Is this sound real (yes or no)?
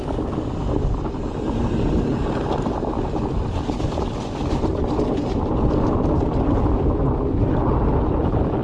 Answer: yes